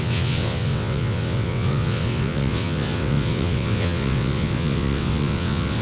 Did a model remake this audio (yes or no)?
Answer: yes